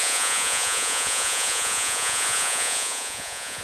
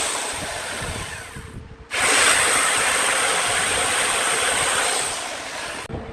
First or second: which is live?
second